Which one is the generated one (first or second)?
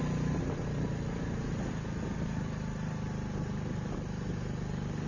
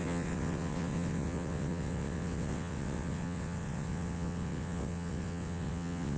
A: second